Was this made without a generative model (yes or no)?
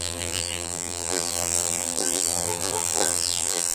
no